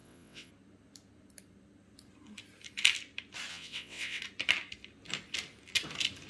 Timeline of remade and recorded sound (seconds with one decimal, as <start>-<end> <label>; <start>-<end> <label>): 0.0-0.5 remade; 0.5-3.5 recorded; 3.5-4.2 remade; 4.2-6.3 recorded